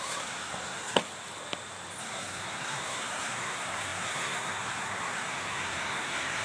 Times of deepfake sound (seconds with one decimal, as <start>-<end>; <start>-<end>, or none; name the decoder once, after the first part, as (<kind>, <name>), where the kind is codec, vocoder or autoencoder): 0.0-1.0 (codec, SNAC); 2.0-6.4